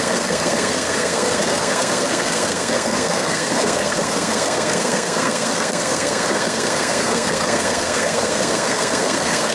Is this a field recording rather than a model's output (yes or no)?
no